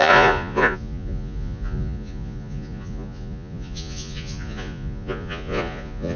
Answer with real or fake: fake